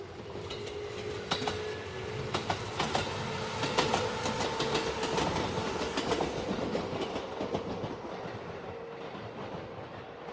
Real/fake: real